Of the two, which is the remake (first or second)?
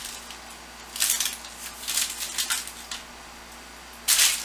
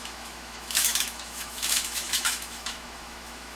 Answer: second